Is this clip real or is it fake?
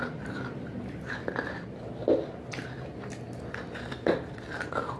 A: real